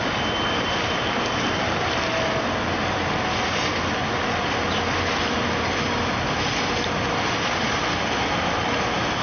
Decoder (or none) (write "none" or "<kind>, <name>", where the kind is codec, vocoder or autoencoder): none